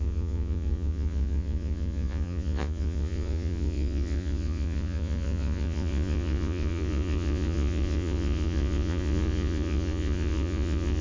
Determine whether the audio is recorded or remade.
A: remade